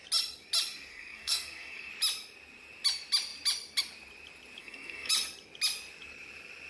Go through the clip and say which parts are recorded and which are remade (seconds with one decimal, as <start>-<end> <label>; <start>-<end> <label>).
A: 0.0-0.9 recorded; 0.9-1.9 remade; 1.9-4.6 recorded; 4.6-5.1 remade; 5.1-6.7 recorded